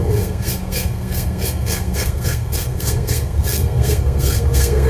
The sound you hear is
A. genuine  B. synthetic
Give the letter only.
B